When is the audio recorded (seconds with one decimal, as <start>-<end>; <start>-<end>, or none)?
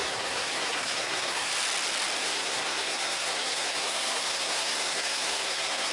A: 1.5-2.2